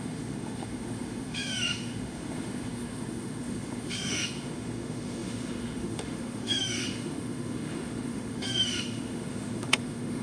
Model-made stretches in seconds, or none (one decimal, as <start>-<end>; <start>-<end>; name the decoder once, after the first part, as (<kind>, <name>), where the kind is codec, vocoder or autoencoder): 0.0-10.2 (autoencoder, DAC-VAE)

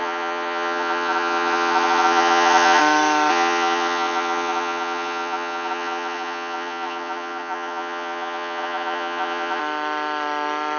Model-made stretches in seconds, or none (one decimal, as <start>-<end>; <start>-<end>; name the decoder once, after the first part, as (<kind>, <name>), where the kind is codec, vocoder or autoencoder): 0.0-2.8 (vocoder, Vocos); 3.3-9.6

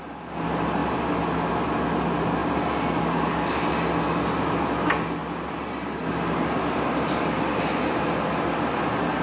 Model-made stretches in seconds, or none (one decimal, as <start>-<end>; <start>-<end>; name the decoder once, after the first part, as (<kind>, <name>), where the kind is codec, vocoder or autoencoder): none

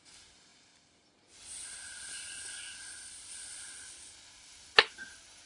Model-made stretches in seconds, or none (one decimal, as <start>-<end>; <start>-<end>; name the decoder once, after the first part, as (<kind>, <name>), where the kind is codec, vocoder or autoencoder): 0.5-3.8 (vocoder, BigVGAN v2)

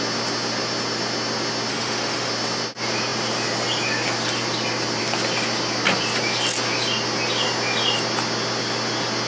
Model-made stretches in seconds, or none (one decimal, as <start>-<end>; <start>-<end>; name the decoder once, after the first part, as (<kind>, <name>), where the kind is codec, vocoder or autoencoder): 1.7-2.3 (autoencoder, DAC-VAE)

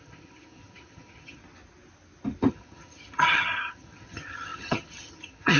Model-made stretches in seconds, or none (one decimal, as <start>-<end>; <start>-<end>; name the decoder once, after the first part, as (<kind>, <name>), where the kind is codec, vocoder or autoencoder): 0.0-1.4 (vocoder, HiFi-GAN); 2.5-5.6

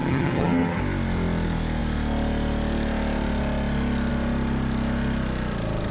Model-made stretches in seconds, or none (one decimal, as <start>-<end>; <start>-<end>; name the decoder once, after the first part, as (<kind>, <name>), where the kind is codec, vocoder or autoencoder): 0.0-0.8 (vocoder, HiFi-GAN)